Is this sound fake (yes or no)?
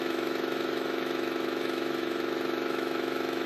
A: yes